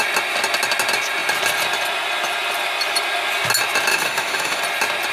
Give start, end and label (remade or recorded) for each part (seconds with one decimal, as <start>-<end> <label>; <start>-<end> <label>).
0.0-3.9 recorded; 3.9-4.6 remade; 4.6-5.1 recorded